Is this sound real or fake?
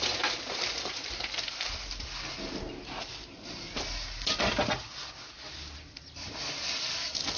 real